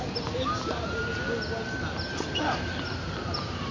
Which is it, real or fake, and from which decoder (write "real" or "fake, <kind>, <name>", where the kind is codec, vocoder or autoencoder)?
real